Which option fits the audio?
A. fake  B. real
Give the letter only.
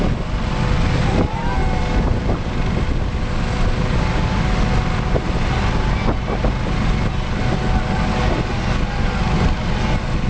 B